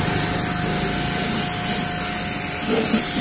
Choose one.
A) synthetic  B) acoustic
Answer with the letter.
B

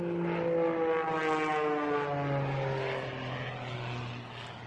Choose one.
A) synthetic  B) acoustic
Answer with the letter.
B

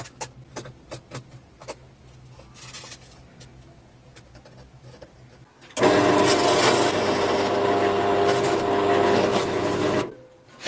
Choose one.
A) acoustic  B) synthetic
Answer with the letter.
A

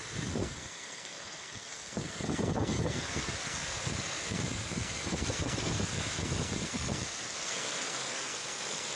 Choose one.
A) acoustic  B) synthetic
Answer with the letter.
B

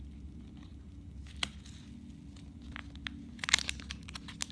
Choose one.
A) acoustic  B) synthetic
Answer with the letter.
A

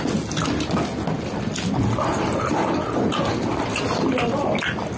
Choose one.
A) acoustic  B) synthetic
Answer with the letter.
A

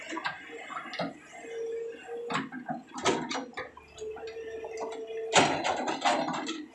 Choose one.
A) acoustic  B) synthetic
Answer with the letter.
A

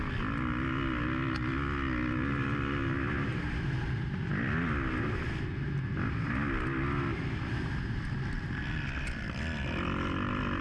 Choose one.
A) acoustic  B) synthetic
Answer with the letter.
A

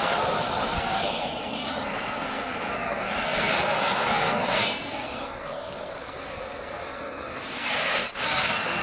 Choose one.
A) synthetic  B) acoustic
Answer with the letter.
A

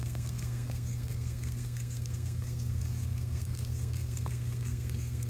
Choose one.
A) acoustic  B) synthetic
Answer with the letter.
B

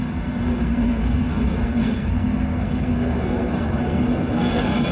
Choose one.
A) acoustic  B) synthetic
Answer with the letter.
B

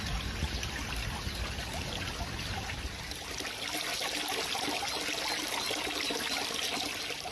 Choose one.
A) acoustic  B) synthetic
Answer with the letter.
A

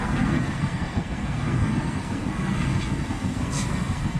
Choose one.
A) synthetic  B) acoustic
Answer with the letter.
A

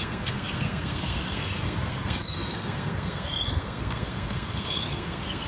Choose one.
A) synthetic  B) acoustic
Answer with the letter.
A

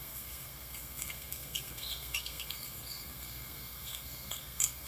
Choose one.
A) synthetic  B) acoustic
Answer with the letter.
A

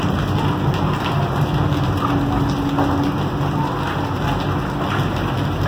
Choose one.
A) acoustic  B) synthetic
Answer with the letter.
A